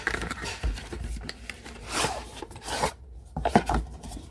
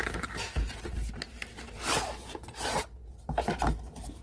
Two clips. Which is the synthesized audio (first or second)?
first